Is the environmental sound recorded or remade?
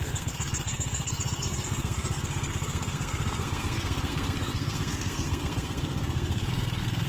remade